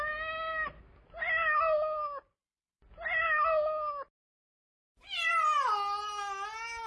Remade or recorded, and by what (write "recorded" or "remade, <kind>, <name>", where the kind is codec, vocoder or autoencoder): recorded